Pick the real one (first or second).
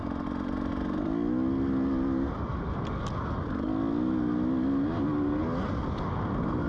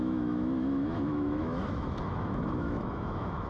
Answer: first